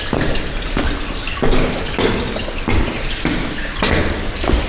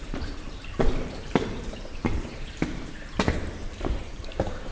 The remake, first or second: second